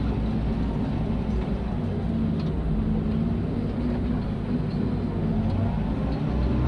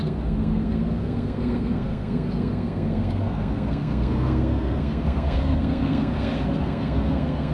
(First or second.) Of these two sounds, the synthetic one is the second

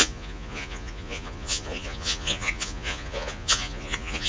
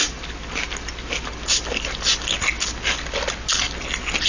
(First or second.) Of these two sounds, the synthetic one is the first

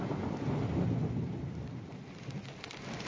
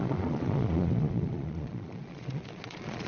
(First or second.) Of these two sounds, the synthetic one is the second